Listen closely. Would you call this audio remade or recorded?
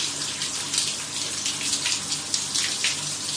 recorded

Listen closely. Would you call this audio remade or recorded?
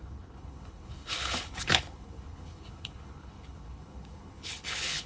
remade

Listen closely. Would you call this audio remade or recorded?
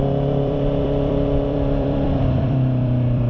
remade